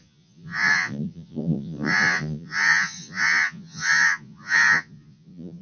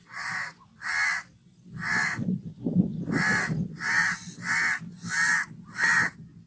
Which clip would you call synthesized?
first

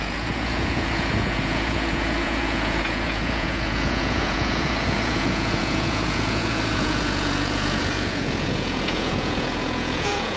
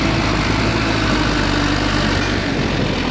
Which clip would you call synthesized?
first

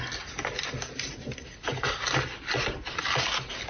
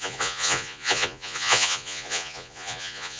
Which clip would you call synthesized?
second